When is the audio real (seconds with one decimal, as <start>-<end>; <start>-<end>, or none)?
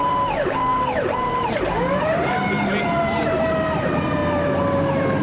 4.2-5.2